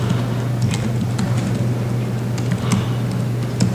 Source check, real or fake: real